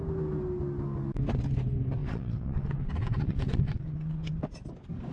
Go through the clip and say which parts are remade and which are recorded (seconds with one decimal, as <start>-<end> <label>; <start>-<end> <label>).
0.0-2.0 recorded; 2.0-4.3 remade; 4.3-5.1 recorded